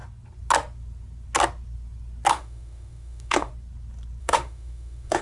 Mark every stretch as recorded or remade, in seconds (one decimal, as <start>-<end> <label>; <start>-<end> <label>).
0.0-2.3 recorded; 2.3-3.5 remade; 3.5-4.2 recorded; 4.2-5.2 remade